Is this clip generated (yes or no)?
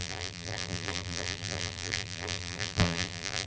yes